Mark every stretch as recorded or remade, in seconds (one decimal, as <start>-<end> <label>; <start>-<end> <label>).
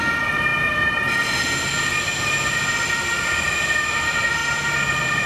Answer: 0.0-5.3 recorded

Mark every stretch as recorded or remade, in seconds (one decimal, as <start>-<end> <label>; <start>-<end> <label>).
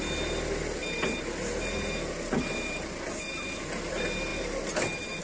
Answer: 0.0-5.2 recorded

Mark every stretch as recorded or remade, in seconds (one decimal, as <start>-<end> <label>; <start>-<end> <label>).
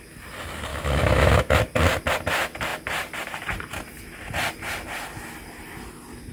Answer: 0.0-0.7 recorded; 0.7-1.6 remade; 1.6-6.3 recorded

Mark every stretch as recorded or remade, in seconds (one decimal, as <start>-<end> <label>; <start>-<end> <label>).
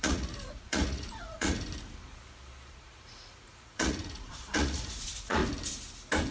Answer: 0.0-1.7 remade; 1.7-2.7 recorded; 2.7-5.4 remade; 5.4-6.3 recorded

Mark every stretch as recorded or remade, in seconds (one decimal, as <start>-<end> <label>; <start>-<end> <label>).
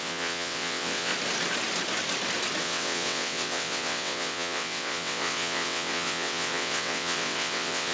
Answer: 0.0-1.1 remade; 1.1-2.6 recorded; 2.6-7.9 remade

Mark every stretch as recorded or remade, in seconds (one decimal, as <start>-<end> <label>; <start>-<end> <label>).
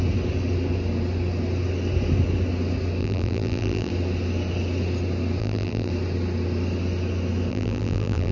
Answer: 0.0-3.0 recorded; 3.0-3.9 remade; 3.9-5.4 recorded; 5.4-5.9 remade; 5.9-7.5 recorded; 7.5-8.3 remade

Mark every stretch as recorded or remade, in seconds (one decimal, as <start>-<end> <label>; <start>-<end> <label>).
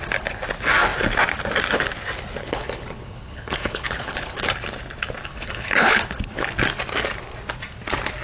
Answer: 0.0-2.4 recorded; 2.4-4.4 remade; 4.4-5.3 recorded; 5.3-6.5 remade; 6.5-8.2 recorded